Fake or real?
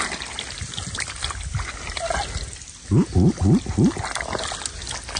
real